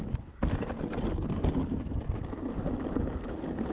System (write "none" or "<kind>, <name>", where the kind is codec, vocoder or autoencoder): none